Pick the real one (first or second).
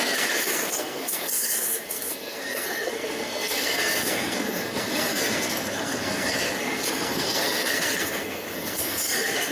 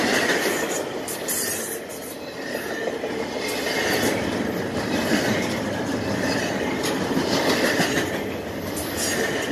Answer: second